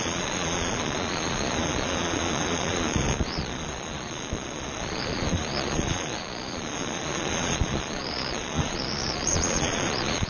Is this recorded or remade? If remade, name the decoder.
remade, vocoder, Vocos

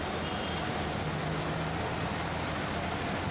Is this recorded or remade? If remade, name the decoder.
recorded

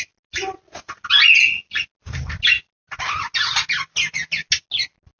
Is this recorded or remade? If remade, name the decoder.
recorded